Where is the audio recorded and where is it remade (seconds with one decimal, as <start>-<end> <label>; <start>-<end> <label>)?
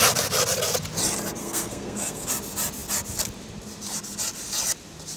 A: 0.0-1.4 recorded; 1.4-2.3 remade; 2.3-5.2 recorded